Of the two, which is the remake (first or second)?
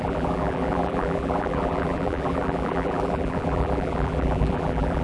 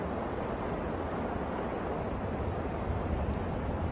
first